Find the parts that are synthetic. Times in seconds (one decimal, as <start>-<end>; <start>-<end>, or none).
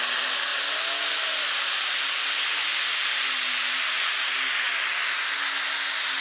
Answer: none